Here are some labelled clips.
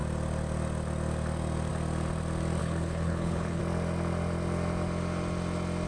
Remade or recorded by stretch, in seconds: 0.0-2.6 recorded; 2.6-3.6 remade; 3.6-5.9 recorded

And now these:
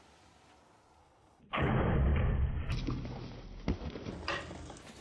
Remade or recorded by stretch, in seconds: 0.0-1.0 recorded; 1.0-1.7 remade; 1.7-5.0 recorded

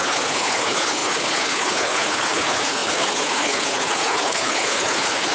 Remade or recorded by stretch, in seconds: 0.0-5.3 remade

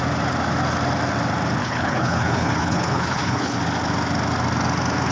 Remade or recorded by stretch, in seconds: 0.0-1.6 recorded; 1.6-3.6 remade; 3.6-5.1 recorded